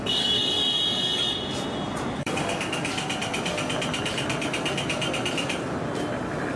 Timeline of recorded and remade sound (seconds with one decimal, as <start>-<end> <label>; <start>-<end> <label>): 0.0-0.4 remade; 0.4-2.2 recorded; 2.2-2.9 remade; 2.9-6.6 recorded